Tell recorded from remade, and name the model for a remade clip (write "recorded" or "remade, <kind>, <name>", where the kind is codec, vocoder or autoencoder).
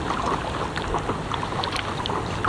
recorded